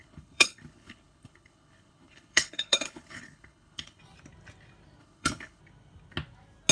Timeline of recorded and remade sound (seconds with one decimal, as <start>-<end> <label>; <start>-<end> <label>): 0.0-4.0 remade; 4.0-5.0 recorded; 5.0-5.6 remade; 5.6-6.7 recorded